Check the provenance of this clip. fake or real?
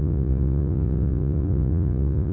fake